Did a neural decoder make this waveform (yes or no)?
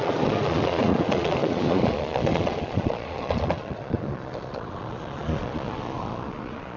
yes